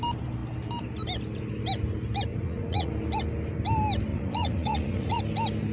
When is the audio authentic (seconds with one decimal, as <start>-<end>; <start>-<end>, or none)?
0.0-2.3; 2.9-4.1; 5.2-5.7